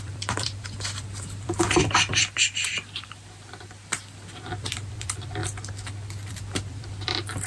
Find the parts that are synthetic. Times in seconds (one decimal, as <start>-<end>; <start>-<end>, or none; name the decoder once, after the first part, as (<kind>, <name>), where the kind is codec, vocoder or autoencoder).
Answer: 0.0-5.4 (vocoder, BigVGAN v2); 6.3-7.5